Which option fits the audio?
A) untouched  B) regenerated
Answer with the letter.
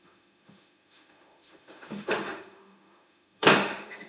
B